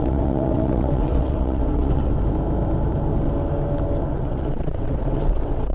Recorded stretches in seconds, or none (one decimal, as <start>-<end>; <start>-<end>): 2.1-4.1